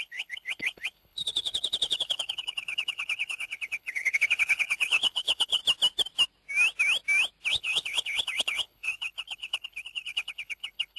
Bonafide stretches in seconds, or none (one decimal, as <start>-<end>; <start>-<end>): 5.6-7.5